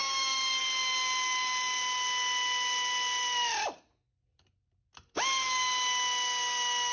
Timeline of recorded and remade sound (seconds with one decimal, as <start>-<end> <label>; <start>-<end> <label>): 0.0-0.6 remade; 0.6-6.9 recorded